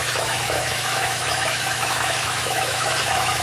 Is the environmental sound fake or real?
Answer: fake